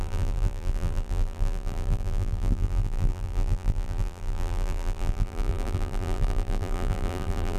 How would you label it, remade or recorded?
remade